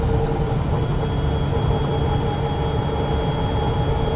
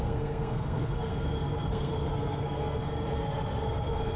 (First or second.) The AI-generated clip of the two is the second